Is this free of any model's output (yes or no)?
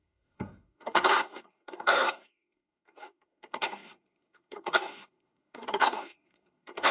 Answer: no